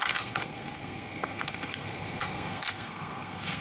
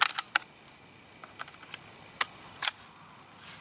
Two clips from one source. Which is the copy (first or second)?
first